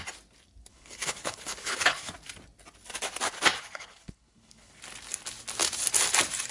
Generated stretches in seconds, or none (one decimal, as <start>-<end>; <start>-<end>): 0.7-2.1; 3.6-4.8